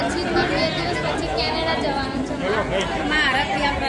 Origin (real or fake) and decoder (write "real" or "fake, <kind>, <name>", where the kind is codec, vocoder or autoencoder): real